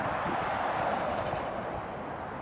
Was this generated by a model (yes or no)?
no